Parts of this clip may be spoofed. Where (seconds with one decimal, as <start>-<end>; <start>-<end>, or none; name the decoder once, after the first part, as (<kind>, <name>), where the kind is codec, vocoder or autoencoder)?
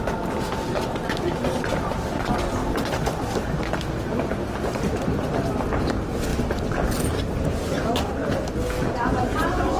none